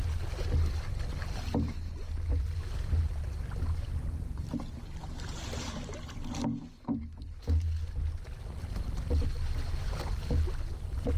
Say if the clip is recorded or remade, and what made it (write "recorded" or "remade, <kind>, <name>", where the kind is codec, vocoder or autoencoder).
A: recorded